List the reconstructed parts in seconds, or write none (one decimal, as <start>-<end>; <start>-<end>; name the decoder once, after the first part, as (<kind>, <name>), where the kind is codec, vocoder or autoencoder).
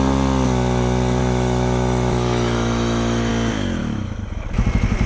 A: 1.2-3.3 (autoencoder, DAC-VAE); 3.8-4.4